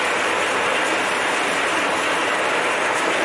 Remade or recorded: remade